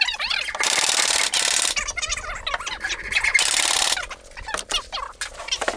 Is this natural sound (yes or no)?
yes